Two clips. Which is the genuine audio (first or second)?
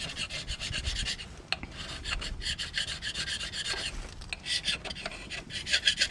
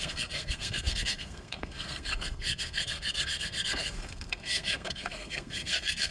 first